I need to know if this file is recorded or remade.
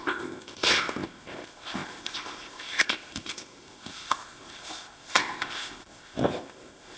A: remade